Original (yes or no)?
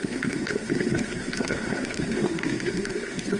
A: no